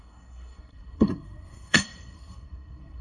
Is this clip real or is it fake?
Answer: fake